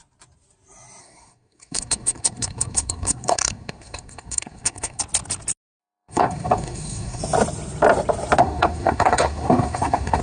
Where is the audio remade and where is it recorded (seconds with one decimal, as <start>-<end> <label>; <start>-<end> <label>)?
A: 0.0-1.0 recorded; 1.0-5.0 remade; 5.0-5.8 recorded; 5.8-7.2 remade; 7.2-8.4 recorded; 8.4-10.2 remade

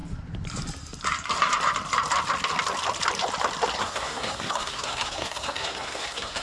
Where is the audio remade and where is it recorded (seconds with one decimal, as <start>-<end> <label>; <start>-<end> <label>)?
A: 0.0-3.8 recorded; 3.8-6.4 remade